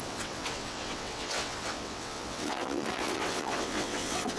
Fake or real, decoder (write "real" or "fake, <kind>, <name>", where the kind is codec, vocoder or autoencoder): fake, vocoder, WaveNeXt